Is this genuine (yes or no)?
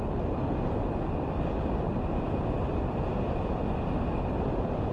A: yes